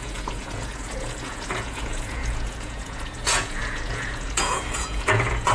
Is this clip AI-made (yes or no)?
yes